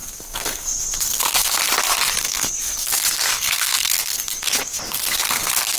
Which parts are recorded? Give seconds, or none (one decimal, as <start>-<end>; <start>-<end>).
1.6-2.2